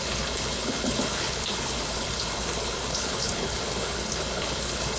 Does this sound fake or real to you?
fake